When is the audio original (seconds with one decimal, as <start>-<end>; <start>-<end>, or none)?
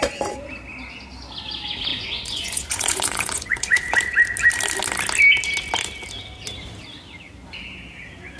0.0-1.9; 4.0-8.4